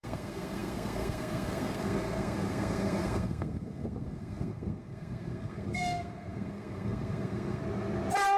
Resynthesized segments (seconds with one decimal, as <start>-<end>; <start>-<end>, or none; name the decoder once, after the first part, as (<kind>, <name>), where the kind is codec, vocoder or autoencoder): 0.0-7.6 (codec, SNAC)

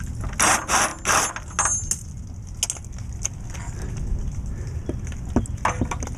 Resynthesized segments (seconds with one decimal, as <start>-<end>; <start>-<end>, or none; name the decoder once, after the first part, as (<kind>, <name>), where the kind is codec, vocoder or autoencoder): none

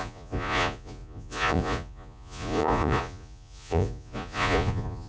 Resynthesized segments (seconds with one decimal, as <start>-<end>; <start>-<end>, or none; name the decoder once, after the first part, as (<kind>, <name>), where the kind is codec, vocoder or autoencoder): 0.0-5.1 (vocoder, Vocos)

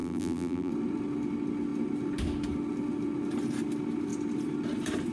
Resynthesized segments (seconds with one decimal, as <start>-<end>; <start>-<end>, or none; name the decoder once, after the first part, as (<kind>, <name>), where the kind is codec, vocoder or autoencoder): 0.0-0.7 (vocoder, BigVGAN v2)

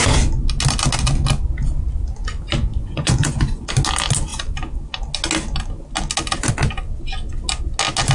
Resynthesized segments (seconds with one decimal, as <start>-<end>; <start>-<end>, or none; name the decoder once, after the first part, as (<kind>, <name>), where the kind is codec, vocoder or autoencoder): 2.7-3.7 (vocoder, Vocos)

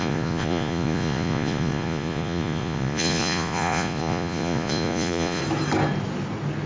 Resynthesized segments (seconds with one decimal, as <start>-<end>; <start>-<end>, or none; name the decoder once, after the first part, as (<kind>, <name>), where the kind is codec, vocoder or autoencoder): 0.0-5.4 (vocoder, Vocos)

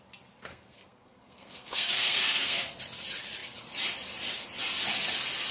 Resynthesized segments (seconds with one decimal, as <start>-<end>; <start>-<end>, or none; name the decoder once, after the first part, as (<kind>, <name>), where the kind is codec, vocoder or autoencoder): 0.5-2.7 (codec, SNAC)